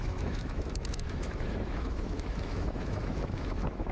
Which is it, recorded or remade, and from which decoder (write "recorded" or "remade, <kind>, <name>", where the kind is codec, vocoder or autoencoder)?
remade, autoencoder, DAC-VAE